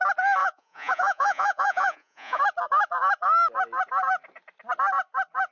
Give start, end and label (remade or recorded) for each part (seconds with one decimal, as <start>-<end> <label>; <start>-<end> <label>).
0.0-0.4 recorded; 0.4-2.4 remade; 2.4-5.5 recorded